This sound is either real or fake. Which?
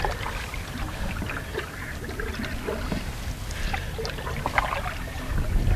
real